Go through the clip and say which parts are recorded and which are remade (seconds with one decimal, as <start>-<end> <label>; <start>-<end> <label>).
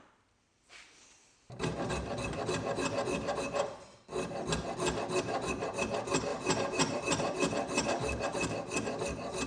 0.0-6.3 recorded; 6.3-7.0 remade; 7.0-9.5 recorded